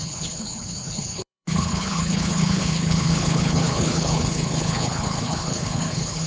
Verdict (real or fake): fake